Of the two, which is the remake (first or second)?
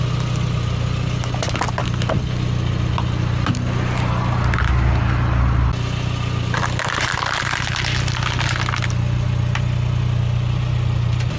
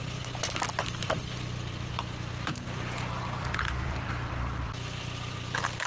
second